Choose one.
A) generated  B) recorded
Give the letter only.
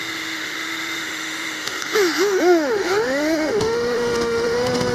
A